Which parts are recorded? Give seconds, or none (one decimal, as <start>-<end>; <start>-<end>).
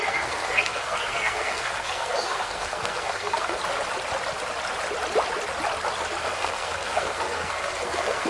3.6-6.2